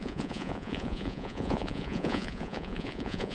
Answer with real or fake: fake